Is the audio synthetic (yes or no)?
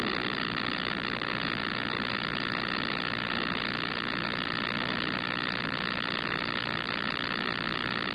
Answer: no